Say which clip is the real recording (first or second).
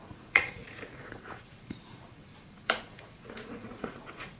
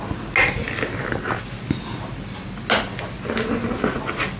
second